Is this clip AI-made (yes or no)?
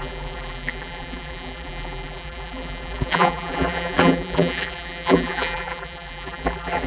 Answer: yes